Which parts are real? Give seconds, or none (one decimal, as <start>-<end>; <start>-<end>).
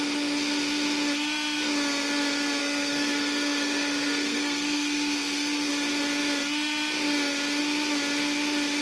0.0-2.6; 5.7-8.8